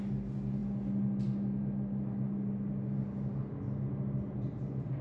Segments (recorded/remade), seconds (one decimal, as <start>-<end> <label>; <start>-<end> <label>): 0.0-5.0 recorded

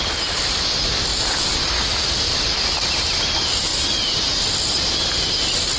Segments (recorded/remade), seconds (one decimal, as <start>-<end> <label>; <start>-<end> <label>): 0.0-1.1 recorded; 1.1-1.6 remade; 1.6-5.8 recorded

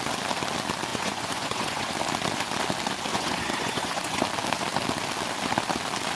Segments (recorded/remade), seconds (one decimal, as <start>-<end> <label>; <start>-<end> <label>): 0.0-0.9 recorded; 0.9-1.9 remade; 1.9-3.1 recorded; 3.1-4.2 remade; 4.2-6.2 recorded